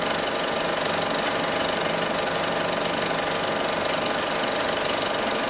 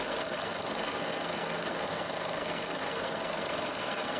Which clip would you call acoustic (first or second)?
first